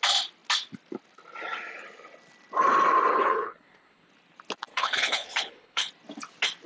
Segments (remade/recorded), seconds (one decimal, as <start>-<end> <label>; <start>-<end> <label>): 0.0-3.1 recorded; 3.1-4.1 remade; 4.1-4.7 recorded; 4.7-5.9 remade; 5.9-6.7 recorded